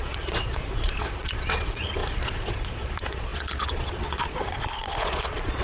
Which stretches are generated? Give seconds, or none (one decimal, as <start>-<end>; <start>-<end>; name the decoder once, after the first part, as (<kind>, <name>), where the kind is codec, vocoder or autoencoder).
0.0-5.6 (vocoder, Vocos)